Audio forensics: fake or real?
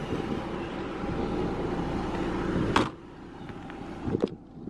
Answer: real